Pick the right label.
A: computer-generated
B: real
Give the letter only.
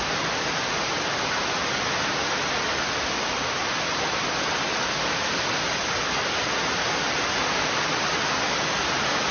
B